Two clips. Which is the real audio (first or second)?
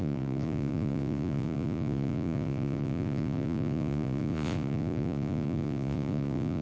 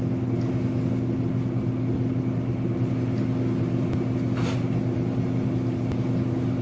second